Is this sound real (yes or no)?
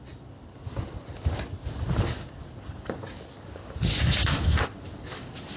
yes